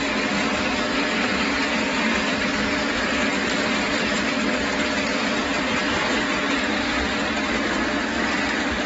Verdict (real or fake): real